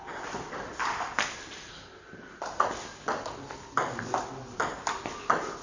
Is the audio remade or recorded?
recorded